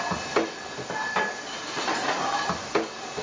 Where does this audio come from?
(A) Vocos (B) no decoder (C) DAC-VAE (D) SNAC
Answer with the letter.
B